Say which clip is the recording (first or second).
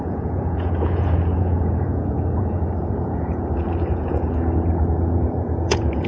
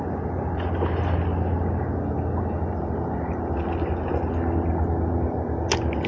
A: second